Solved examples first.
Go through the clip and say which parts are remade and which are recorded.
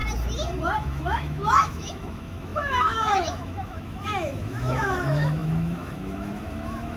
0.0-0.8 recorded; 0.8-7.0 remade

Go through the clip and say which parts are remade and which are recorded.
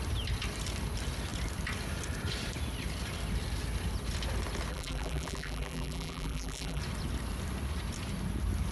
0.0-4.7 recorded; 4.7-6.8 remade; 6.8-8.7 recorded